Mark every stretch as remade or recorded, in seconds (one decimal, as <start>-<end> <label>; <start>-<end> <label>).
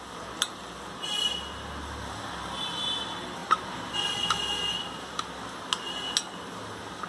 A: 0.0-7.1 recorded